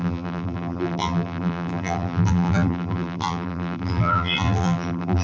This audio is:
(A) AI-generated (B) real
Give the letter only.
A